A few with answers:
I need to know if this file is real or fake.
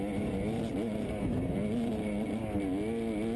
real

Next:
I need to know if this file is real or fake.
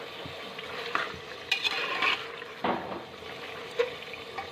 real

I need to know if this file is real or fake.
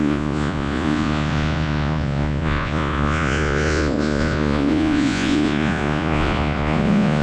fake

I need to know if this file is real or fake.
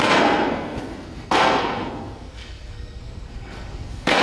fake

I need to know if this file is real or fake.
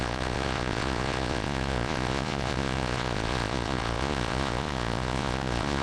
fake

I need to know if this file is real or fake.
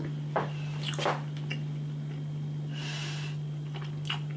real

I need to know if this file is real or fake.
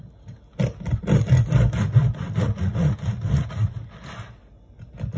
real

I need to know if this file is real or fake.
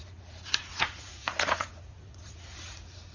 fake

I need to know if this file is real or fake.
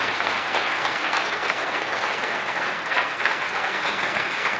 fake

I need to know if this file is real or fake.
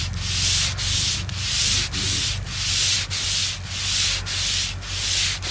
real